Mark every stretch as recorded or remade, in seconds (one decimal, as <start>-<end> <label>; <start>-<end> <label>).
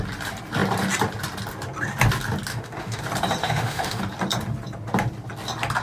0.0-2.5 recorded; 2.5-3.0 remade; 3.0-3.4 recorded; 3.4-4.0 remade; 4.0-5.8 recorded